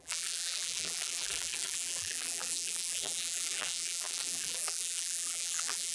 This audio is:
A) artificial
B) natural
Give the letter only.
A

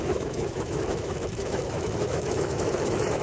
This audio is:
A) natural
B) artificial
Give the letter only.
B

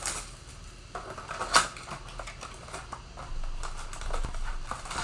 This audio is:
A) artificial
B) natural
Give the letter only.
B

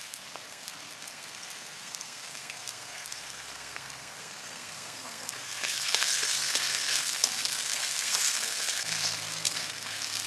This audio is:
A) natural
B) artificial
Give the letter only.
B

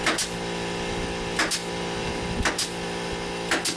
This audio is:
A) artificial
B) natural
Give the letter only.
B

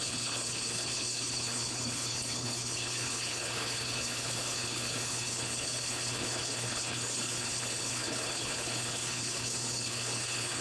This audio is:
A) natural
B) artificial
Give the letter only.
B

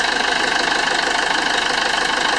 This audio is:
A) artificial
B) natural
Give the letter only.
B